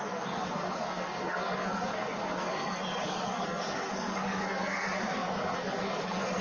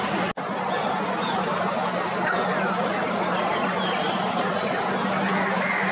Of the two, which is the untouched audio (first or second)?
second